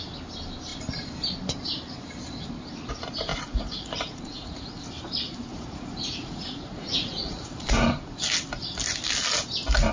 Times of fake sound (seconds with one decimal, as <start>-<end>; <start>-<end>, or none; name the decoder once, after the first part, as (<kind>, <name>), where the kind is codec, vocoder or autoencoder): 3.3-4.8 (vocoder, Vocos); 5.5-7.7